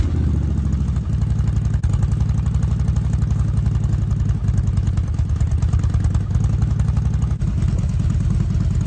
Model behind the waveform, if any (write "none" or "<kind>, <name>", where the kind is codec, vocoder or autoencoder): none